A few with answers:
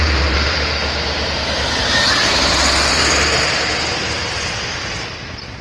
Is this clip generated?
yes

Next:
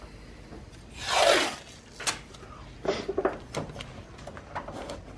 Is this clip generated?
no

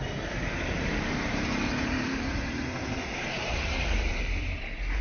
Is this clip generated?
yes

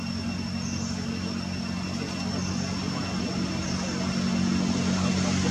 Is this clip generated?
no